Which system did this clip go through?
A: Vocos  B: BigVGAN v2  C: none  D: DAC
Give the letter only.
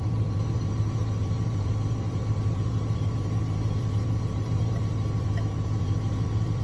B